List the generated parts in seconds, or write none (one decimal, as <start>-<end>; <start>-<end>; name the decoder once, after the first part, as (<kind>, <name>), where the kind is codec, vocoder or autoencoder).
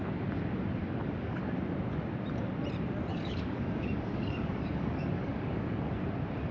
0.8-1.4 (codec, DAC); 3.1-5.8